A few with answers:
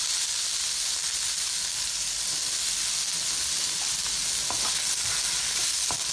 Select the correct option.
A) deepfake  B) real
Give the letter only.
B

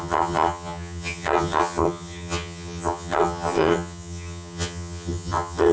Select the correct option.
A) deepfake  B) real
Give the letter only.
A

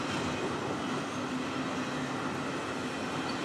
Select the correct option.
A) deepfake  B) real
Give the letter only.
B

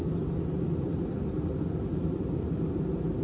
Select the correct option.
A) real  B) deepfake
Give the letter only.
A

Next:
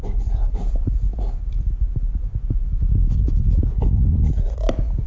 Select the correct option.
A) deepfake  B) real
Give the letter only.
B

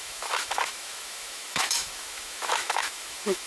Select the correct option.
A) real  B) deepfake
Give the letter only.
B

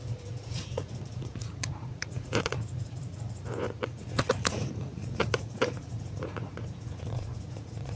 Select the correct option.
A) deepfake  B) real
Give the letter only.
A